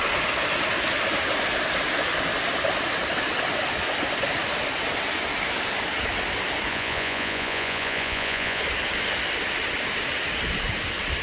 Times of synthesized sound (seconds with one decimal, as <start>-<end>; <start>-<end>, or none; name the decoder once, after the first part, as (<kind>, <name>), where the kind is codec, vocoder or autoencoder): 6.7-8.6 (vocoder, Vocos)

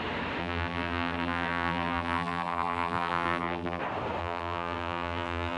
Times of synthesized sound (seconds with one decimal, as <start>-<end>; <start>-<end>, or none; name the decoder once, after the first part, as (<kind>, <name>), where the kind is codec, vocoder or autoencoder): 0.4-3.8 (vocoder, BigVGAN v2); 4.2-5.6

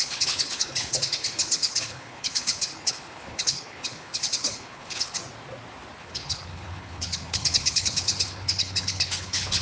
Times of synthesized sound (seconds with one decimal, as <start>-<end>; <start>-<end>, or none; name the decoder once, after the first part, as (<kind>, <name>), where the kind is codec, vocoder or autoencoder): 0.0-5.2 (codec, HILCodec); 6.0-9.6

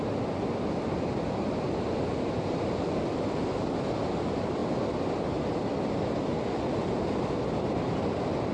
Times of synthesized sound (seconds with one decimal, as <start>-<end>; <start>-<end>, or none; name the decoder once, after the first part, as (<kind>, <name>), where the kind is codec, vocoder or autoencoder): none

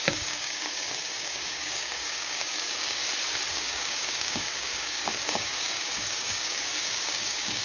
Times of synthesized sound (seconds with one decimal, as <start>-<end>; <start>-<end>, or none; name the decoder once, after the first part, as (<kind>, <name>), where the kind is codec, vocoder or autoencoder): 0.0-3.0 (codec, DAC); 3.5-7.6

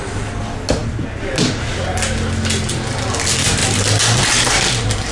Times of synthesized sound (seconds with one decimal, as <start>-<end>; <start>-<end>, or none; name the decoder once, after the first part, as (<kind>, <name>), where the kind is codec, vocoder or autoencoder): 3.6-4.5 (vocoder, BigVGAN v2)